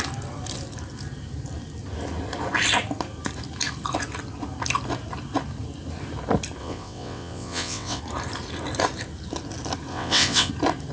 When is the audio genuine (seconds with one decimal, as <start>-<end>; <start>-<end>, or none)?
0.0-6.6; 8.0-9.9; 10.5-10.9